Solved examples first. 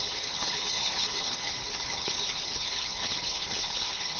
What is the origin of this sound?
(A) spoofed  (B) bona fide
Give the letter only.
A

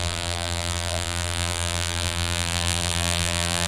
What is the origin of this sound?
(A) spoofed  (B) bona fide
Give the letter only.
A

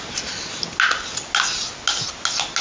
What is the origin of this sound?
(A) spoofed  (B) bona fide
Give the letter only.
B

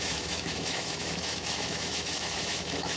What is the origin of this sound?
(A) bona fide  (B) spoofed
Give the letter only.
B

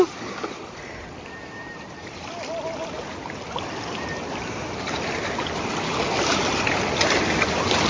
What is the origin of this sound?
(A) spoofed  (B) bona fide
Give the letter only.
B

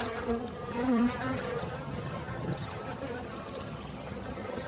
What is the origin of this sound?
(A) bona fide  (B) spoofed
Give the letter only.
B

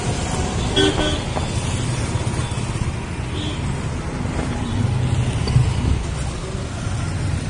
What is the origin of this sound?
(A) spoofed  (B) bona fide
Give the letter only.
B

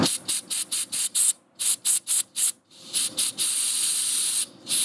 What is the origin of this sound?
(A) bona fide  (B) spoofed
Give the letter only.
A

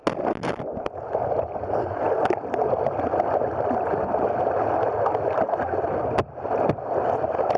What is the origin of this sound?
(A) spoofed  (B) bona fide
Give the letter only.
B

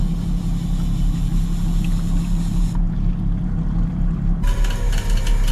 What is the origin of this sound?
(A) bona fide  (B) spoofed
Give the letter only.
A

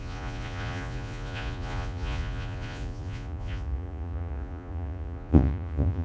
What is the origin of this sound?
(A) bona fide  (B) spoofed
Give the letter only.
B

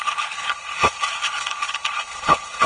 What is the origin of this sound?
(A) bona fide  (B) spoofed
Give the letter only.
B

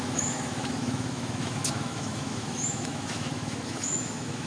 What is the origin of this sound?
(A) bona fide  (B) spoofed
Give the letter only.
B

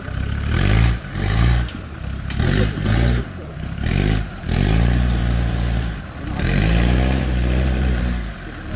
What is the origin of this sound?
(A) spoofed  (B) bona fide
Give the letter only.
A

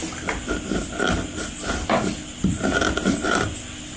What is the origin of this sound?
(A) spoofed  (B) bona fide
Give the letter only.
B